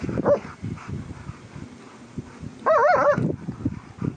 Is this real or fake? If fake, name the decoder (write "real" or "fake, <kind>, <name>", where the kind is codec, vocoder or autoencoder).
real